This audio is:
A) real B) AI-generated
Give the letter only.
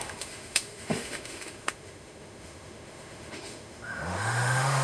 B